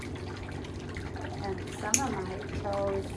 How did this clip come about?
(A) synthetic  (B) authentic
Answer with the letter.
B